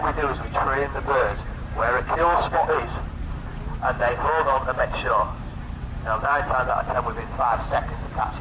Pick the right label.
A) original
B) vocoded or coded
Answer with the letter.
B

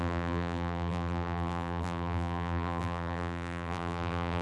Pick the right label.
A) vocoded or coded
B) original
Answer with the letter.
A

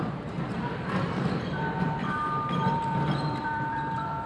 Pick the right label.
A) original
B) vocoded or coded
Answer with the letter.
B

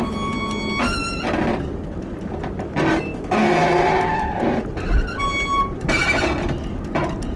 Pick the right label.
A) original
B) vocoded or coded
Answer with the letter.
A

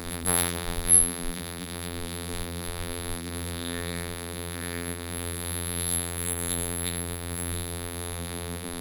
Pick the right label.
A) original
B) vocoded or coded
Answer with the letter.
B